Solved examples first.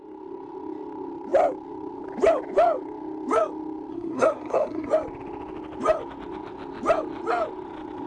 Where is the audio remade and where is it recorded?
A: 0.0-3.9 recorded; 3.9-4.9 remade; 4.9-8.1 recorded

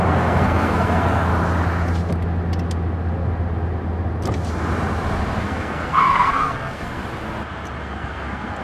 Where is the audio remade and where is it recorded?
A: 0.0-1.3 remade; 1.3-5.4 recorded; 5.4-7.0 remade; 7.0-7.8 recorded; 7.8-8.6 remade

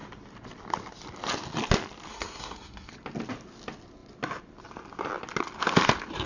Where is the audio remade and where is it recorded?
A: 0.0-2.1 recorded; 2.1-2.9 remade; 2.9-6.3 recorded

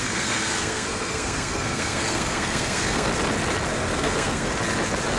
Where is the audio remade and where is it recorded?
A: 0.0-3.1 remade; 3.1-3.9 recorded; 3.9-4.5 remade; 4.5-5.2 recorded

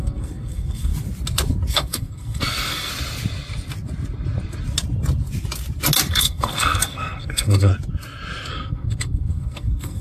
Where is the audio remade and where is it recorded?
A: 0.0-0.9 remade; 0.9-1.7 recorded; 1.7-2.9 remade; 2.9-6.1 recorded; 6.1-7.7 remade; 7.7-8.5 recorded; 8.5-10.0 remade